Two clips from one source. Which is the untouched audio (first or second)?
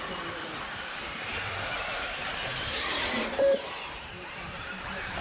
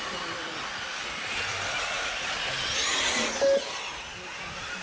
second